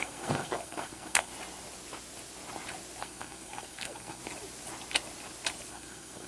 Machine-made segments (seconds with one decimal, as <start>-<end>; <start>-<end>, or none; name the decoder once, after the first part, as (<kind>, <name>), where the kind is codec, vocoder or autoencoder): 0.0-1.3 (codec, SNAC); 3.0-4.2; 5.7-6.3